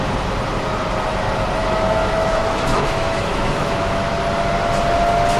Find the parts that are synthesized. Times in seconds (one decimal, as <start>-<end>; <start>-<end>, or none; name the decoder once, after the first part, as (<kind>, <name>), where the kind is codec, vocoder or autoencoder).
1.6-4.0 (autoencoder, DAC-VAE)